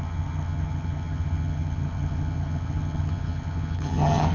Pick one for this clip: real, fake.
fake